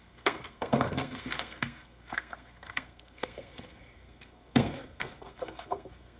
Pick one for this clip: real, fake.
fake